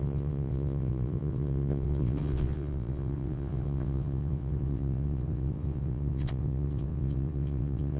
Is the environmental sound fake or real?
fake